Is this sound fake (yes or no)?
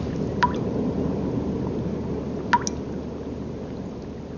no